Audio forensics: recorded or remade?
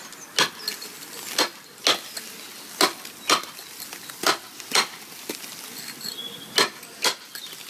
recorded